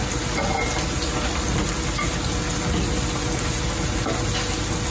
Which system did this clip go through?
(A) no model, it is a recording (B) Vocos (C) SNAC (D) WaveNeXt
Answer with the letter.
A